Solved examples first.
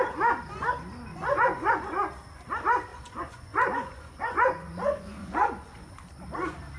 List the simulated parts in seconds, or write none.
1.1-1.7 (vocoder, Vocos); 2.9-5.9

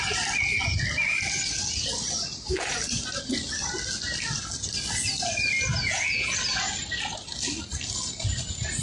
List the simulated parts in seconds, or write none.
5.7-6.4 (vocoder, Vocos)

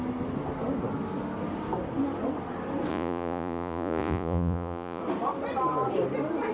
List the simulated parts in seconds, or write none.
2.9-5.0 (vocoder, Vocos)

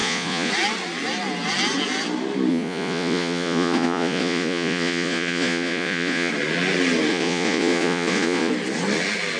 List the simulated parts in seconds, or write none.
0.0-0.5 (vocoder, Vocos); 2.5-6.3; 7.1-8.5

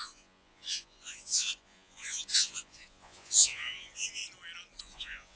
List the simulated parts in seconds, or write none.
0.0-4.2 (vocoder, Vocos); 4.8-5.4